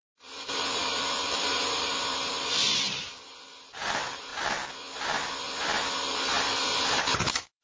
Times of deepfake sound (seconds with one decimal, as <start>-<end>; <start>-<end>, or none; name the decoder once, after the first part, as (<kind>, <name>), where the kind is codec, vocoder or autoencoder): 0.0-4.3 (vocoder, BigVGAN v2); 6.4-7.6